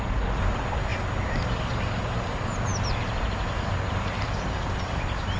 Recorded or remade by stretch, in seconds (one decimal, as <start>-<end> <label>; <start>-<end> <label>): 0.0-5.4 recorded